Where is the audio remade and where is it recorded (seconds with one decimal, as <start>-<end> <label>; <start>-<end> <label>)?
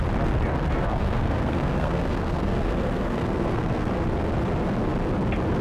0.0-0.5 recorded; 0.5-3.9 remade; 3.9-5.6 recorded